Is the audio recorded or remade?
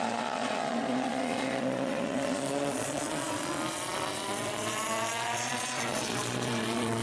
remade